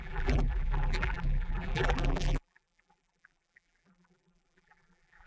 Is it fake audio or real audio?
fake